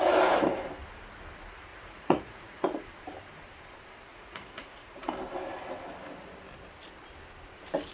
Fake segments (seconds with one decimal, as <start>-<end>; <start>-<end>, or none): 1.7-2.9; 4.1-5.1